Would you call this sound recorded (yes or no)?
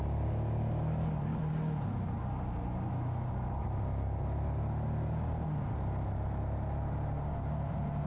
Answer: yes